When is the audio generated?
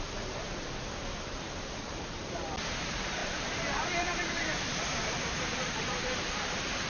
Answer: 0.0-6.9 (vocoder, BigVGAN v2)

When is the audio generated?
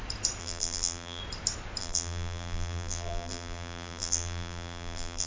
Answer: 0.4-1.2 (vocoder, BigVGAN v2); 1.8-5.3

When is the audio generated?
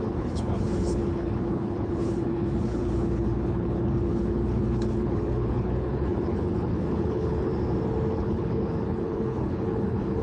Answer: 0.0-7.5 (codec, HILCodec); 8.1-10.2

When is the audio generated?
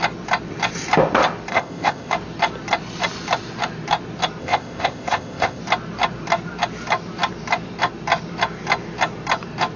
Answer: 1.5-2.1 (codec, ZipCodec); 4.4-5.6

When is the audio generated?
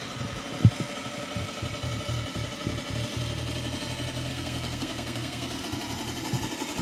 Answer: 4.3-5.6 (codec, SNAC)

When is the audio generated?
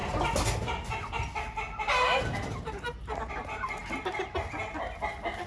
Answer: none